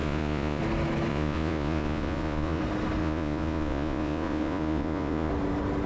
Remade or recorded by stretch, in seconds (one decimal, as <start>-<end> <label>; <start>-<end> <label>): 0.0-0.6 remade; 0.6-1.1 recorded; 1.1-2.6 remade; 2.6-3.0 recorded; 3.0-5.3 remade; 5.3-5.9 recorded